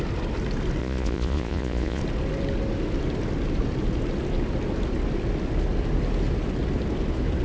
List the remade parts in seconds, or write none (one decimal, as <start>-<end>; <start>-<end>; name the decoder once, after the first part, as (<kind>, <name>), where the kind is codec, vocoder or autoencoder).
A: 0.8-2.0 (vocoder, Vocos)